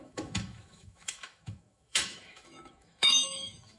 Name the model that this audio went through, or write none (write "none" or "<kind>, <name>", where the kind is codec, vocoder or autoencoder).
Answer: autoencoder, DAC-VAE